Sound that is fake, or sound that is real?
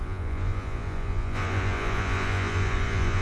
fake